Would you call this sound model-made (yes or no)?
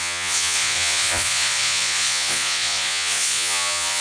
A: yes